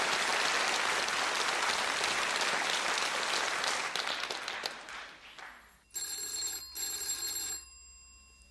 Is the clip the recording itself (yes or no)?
yes